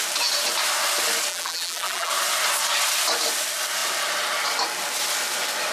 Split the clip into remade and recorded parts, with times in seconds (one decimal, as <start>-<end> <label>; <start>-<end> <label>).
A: 0.0-1.3 recorded; 1.3-2.1 remade; 2.1-5.7 recorded